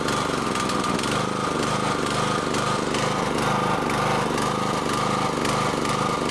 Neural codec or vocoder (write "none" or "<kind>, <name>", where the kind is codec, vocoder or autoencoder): none